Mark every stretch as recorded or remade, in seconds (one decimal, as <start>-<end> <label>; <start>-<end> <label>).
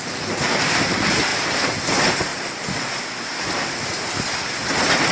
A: 0.0-5.1 recorded